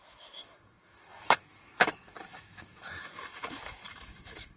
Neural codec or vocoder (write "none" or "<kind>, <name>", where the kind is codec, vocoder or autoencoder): autoencoder, DAC-VAE